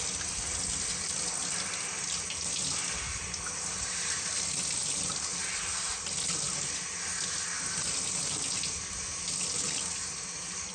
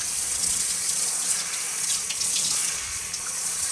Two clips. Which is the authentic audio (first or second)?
first